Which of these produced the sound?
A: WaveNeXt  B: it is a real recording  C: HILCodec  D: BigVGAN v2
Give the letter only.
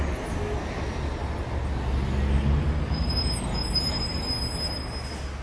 B